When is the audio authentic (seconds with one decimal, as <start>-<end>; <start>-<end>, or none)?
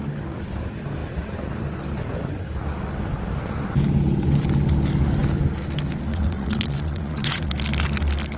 0.0-6.1; 7.5-8.4